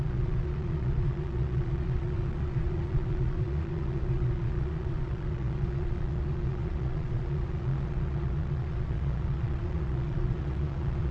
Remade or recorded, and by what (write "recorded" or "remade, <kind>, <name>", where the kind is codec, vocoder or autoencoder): remade, vocoder, Vocos